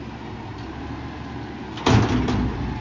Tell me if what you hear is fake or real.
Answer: real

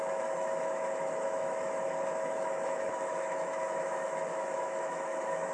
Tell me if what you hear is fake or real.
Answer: fake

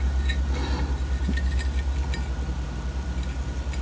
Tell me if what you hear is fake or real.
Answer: real